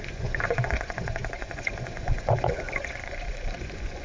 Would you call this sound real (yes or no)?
no